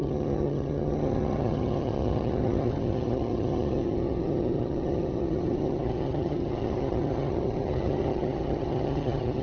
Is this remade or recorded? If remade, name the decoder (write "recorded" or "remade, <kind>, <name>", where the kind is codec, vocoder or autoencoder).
remade, vocoder, HiFi-GAN